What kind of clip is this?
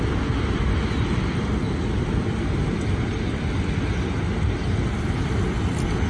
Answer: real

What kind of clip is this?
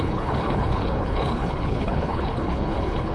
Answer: fake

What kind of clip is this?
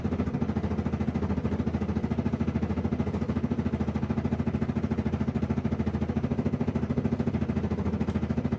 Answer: real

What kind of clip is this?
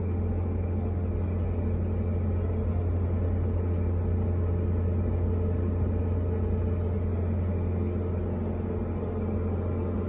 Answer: real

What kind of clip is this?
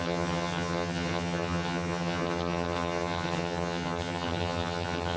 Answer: fake